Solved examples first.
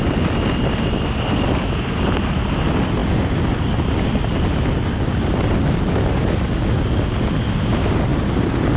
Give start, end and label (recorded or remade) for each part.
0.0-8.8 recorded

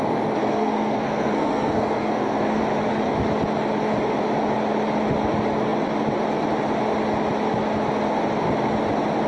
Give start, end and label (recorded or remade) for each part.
0.0-0.4 recorded; 0.4-2.6 remade; 2.6-9.3 recorded

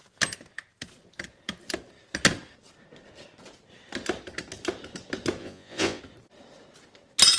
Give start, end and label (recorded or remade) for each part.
0.0-5.4 recorded; 5.4-6.0 remade; 6.0-7.4 recorded

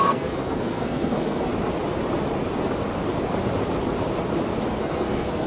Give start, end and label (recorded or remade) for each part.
0.0-1.5 remade; 1.5-4.8 recorded; 4.8-5.5 remade

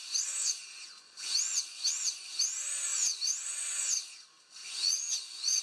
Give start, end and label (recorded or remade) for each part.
0.0-0.4 recorded; 0.4-2.4 remade; 2.4-2.9 recorded; 2.9-3.9 remade; 3.9-4.6 recorded; 4.6-5.6 remade

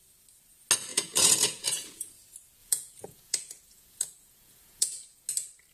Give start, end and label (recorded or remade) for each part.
0.0-0.9 recorded; 0.9-2.1 remade; 2.1-2.6 recorded; 2.6-5.3 remade; 5.3-5.7 recorded